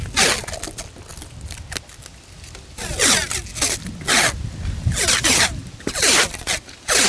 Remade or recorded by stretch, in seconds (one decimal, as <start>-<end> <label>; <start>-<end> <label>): 0.0-7.1 recorded